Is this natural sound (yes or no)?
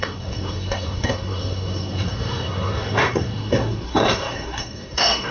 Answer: no